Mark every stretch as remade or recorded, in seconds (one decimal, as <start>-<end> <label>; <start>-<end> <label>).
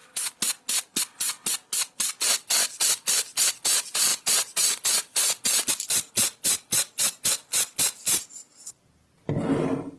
0.0-10.0 recorded